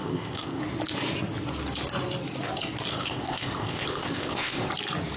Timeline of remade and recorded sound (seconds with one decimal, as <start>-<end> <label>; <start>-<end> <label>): 0.0-0.6 remade; 0.6-2.9 recorded; 2.9-4.7 remade; 4.7-5.2 recorded